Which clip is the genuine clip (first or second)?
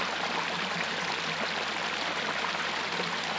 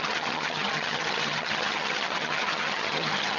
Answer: first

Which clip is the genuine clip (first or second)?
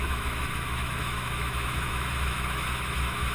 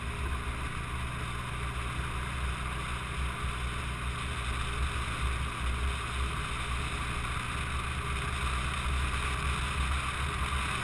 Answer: second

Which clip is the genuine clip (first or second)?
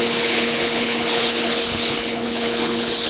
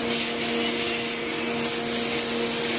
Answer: second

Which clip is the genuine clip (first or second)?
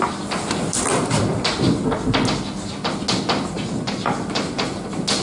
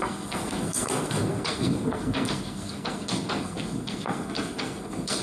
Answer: first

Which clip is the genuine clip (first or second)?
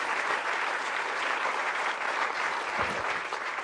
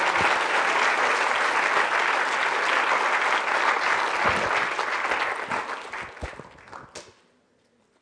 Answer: second